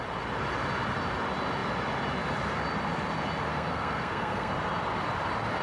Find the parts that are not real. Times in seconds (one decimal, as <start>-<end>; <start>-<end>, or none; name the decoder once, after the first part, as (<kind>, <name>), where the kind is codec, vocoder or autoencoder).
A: 3.5-4.5 (codec, SNAC)